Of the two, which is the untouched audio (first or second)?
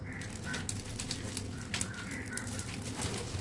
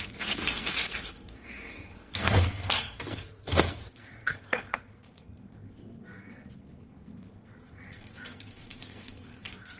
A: first